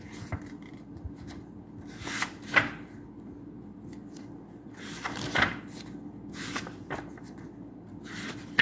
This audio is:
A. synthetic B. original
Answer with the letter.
B